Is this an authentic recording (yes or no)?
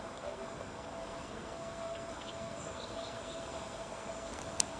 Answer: no